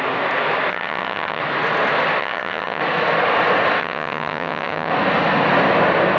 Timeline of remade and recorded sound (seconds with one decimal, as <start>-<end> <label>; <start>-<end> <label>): 0.0-0.7 recorded; 0.7-1.4 remade; 1.4-2.2 recorded; 2.2-2.8 remade; 2.8-3.8 recorded; 3.8-4.9 remade; 4.9-6.2 recorded